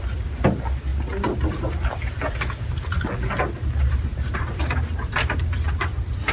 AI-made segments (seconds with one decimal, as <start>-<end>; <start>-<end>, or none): 0.0-0.9; 3.8-6.3